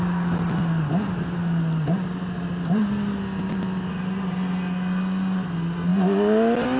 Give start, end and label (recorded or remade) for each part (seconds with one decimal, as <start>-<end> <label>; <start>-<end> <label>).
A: 0.0-6.8 recorded